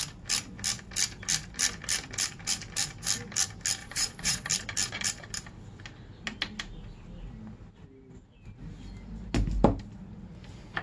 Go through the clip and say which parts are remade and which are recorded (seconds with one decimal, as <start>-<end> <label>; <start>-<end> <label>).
0.0-3.8 recorded; 3.8-4.5 remade; 4.5-10.8 recorded